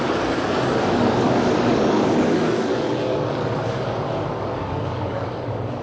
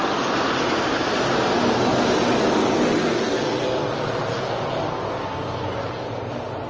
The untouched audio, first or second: second